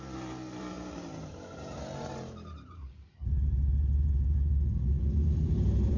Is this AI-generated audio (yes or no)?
yes